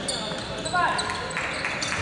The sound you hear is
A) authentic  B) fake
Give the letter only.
A